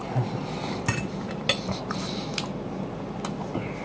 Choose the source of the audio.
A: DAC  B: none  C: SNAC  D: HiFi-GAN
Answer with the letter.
B